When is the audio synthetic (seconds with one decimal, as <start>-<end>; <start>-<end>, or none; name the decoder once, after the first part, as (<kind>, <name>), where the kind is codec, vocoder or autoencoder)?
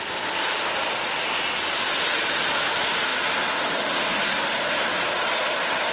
none